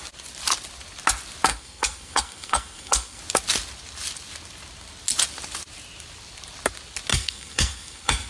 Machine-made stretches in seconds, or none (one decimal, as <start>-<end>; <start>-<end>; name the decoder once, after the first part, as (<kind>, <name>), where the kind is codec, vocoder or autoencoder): 1.5-3.2 (codec, SNAC); 7.1-8.3